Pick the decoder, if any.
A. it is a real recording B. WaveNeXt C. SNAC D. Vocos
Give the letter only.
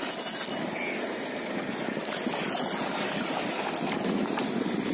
A